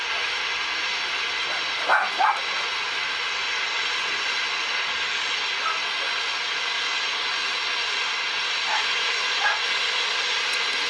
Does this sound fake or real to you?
real